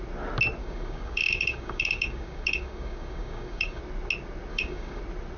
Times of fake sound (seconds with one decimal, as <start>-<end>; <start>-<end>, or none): 0.6-3.8; 4.5-5.0